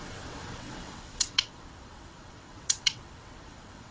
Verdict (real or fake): fake